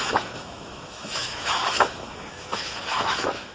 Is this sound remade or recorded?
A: remade